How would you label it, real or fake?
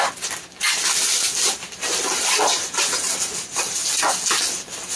real